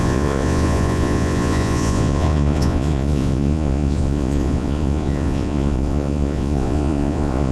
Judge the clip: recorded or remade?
remade